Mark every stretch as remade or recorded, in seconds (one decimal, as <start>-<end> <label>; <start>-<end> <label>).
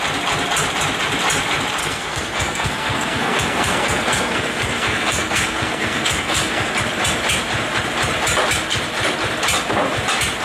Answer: 0.0-1.8 recorded; 1.8-6.7 remade; 6.7-10.4 recorded